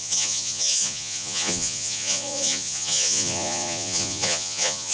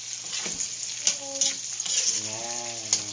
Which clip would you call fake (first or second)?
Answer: first